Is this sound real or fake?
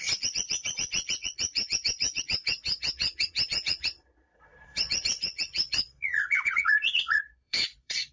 fake